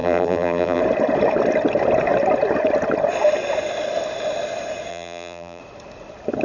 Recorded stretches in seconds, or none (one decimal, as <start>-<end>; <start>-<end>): 0.8-4.9; 5.6-6.4